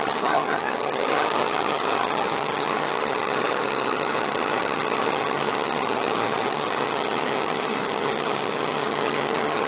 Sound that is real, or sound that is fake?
fake